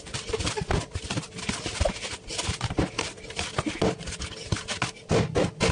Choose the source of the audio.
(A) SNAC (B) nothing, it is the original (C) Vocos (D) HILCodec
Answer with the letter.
B